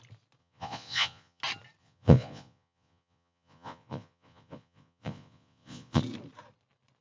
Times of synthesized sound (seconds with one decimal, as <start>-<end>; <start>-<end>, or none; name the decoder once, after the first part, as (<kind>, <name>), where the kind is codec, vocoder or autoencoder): 0.4-1.4 (vocoder, Vocos); 1.8-6.0